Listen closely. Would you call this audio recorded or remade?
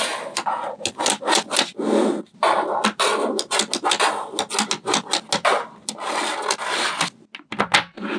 recorded